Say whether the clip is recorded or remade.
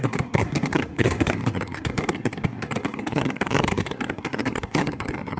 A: remade